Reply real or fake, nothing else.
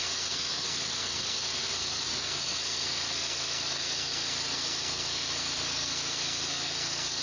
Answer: fake